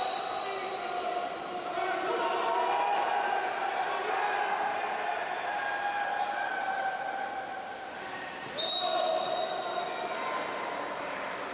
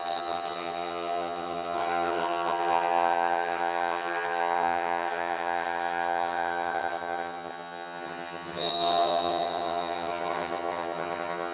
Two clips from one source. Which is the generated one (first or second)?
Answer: second